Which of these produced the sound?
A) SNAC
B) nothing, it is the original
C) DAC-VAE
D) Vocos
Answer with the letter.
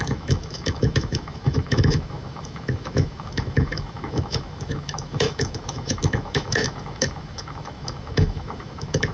C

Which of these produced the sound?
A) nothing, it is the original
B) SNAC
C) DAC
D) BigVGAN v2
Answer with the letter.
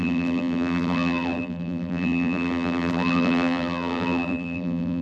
D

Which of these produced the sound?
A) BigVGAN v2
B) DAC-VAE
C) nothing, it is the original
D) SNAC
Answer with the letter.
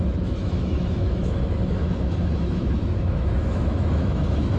B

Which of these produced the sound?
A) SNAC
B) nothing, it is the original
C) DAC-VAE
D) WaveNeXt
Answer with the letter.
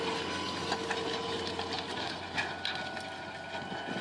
B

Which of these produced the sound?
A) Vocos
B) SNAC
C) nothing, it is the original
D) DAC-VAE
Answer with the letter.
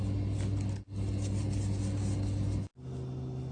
C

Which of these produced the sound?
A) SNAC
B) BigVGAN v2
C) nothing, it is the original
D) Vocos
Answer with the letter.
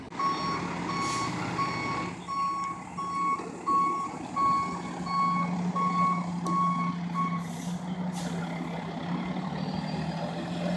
C